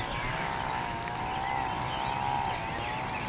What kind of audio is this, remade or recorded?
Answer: recorded